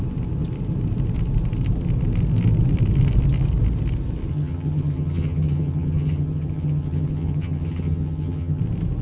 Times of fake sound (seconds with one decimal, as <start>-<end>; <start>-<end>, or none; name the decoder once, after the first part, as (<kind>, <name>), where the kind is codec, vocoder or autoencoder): 4.3-8.6 (vocoder, HiFi-GAN)